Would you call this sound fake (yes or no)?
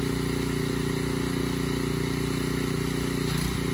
no